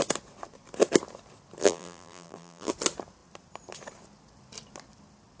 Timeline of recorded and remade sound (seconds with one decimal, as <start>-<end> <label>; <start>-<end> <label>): 0.0-1.6 recorded; 1.6-2.7 remade; 2.7-5.4 recorded